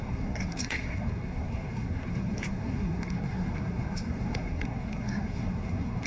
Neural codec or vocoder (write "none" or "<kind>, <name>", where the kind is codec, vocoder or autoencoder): codec, SNAC